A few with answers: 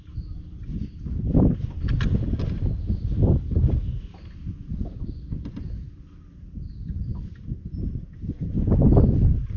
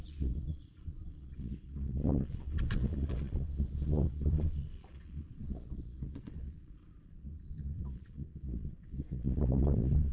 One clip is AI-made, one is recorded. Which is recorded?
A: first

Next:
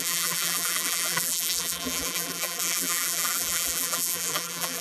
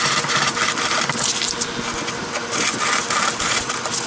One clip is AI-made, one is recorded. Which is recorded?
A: second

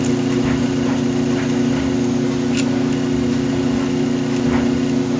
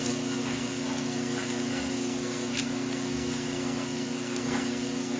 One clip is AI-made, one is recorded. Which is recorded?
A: first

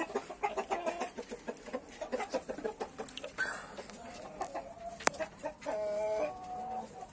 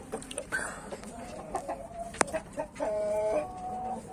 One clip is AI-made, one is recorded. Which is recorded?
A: first